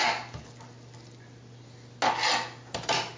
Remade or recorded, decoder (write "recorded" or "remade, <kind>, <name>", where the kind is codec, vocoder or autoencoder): recorded